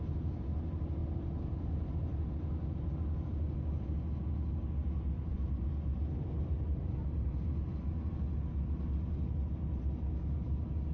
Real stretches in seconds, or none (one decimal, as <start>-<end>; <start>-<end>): 0.0-10.9